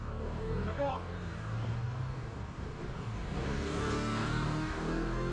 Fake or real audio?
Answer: fake